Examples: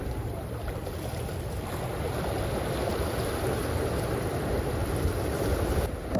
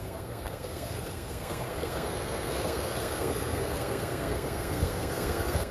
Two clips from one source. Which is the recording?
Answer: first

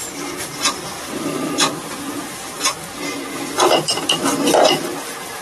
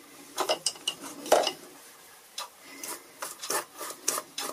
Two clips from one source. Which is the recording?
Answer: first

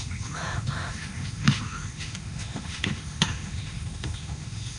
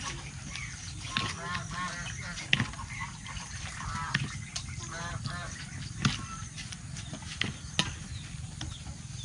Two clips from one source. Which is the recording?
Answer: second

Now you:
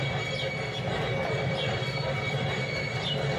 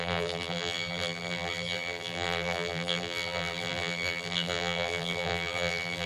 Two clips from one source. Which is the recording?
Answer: first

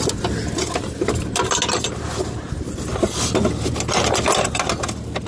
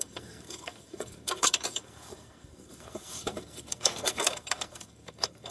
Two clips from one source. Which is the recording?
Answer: first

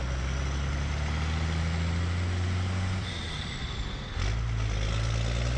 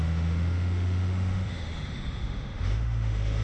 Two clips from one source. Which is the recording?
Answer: first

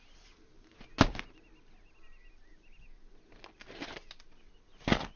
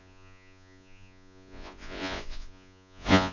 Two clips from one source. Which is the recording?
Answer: first